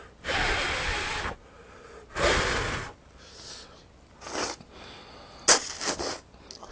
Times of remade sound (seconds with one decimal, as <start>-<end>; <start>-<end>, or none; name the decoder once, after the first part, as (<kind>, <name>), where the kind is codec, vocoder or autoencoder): none